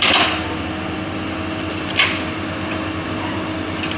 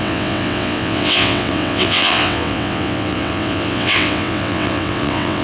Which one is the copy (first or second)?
second